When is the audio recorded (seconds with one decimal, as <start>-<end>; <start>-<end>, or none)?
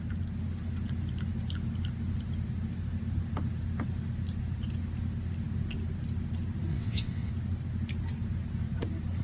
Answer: 0.0-6.7; 7.3-9.2